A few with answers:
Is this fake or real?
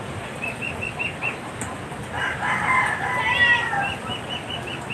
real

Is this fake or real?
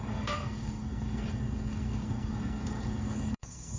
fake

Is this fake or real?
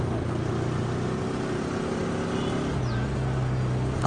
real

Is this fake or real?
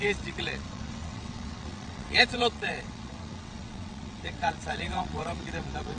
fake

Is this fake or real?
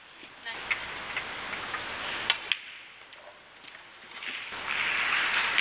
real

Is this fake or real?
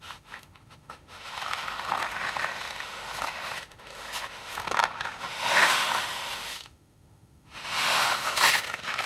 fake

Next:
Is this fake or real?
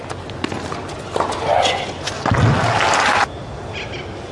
real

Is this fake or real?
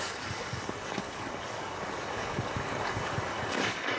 fake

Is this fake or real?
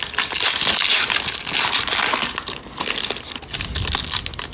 real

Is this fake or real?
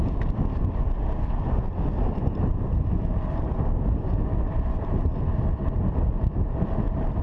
real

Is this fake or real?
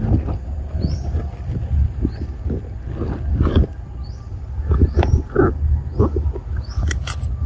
real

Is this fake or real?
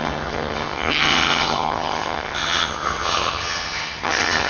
fake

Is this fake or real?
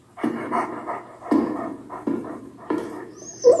real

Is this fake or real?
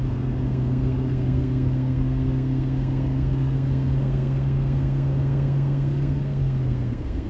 fake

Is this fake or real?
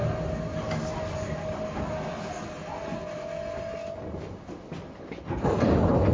real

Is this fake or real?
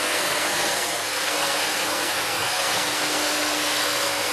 fake